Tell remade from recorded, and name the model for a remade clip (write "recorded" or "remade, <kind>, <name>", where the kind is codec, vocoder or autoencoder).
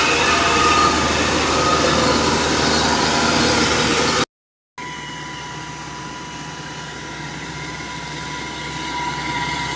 recorded